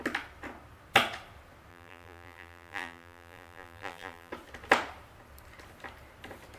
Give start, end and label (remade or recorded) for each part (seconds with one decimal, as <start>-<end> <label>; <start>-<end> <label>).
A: 0.0-1.7 recorded; 1.7-4.3 remade; 4.3-6.6 recorded

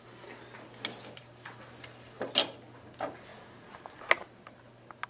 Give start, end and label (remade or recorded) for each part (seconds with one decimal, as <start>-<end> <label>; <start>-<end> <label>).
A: 0.0-5.1 recorded

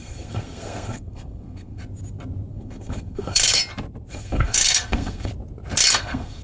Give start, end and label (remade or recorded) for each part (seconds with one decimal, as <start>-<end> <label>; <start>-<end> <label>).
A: 0.0-1.8 remade; 1.8-2.5 recorded; 2.5-3.6 remade; 3.6-4.1 recorded; 4.1-5.3 remade; 5.3-5.9 recorded; 5.9-6.4 remade

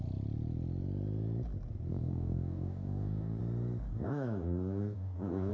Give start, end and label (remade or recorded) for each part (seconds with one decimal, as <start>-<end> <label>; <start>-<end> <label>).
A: 0.0-1.9 recorded; 1.9-3.4 remade; 3.4-3.9 recorded; 3.9-5.5 remade

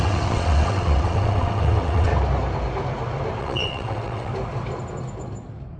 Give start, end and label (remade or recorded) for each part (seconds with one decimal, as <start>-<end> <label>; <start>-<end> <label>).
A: 0.0-2.1 remade; 2.1-3.4 recorded; 3.4-4.3 remade; 4.3-5.8 recorded